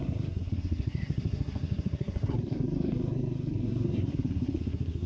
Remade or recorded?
remade